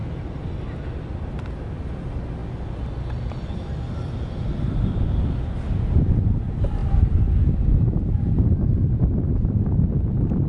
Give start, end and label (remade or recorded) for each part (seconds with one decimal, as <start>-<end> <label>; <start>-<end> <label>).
0.0-10.5 recorded